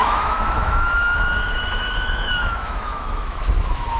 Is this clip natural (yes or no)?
no